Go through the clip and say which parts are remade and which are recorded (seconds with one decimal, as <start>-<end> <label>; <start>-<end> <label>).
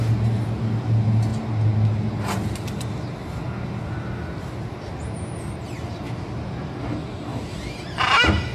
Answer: 0.0-8.5 recorded